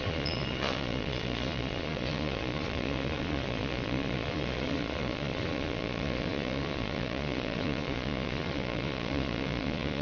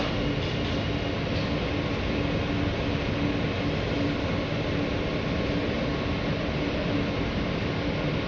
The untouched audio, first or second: second